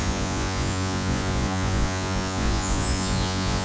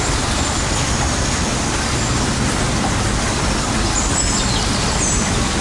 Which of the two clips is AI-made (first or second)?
first